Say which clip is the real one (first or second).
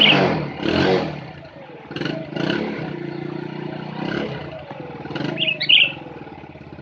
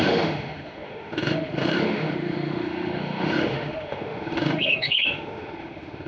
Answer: first